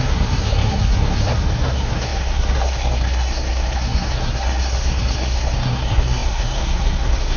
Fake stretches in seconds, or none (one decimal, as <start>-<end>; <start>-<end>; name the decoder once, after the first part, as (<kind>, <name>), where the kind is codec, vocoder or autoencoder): 0.0-7.4 (codec, SNAC)